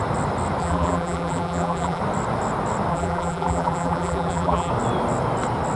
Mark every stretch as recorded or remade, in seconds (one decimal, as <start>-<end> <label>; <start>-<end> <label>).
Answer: 0.0-0.6 recorded; 0.6-2.0 remade; 2.0-2.9 recorded; 2.9-4.7 remade; 4.7-5.8 recorded